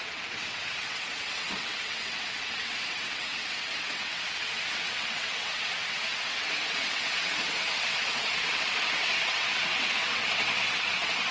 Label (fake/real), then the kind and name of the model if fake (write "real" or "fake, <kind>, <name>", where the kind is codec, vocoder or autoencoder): fake, vocoder, WaveNeXt